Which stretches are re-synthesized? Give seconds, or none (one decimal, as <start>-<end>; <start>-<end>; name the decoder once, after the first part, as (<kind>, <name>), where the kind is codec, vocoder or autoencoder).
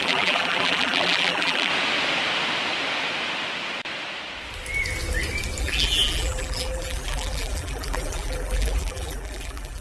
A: 0.0-1.7 (vocoder, BigVGAN v2); 5.6-9.8